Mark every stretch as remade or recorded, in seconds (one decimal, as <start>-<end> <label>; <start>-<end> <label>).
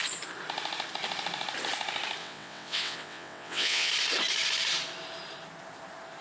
0.0-2.2 recorded; 2.2-3.9 remade; 3.9-6.2 recorded